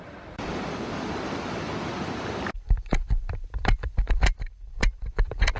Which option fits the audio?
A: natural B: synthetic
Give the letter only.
B